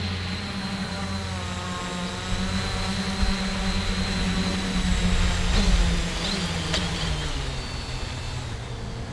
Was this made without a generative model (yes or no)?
yes